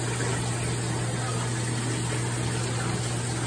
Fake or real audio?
real